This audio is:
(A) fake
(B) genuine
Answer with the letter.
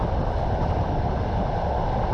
A